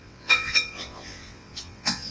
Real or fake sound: fake